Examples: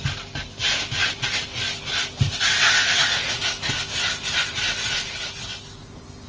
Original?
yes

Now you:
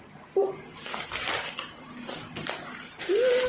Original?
no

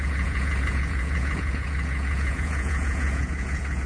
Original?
no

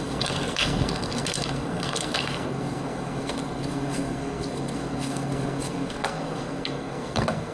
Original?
no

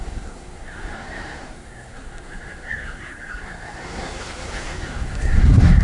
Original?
no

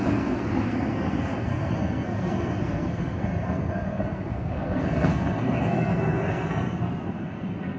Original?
no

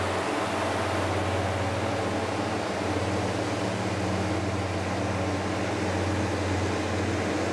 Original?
yes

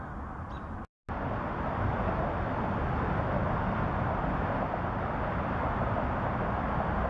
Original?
yes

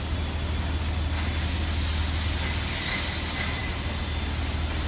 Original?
yes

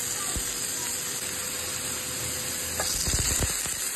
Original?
yes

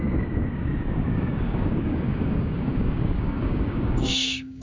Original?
no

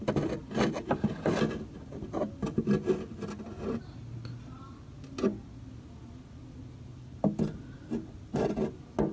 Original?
yes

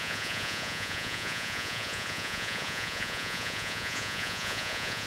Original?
no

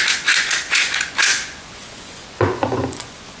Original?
no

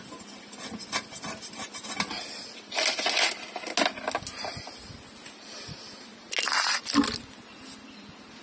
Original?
yes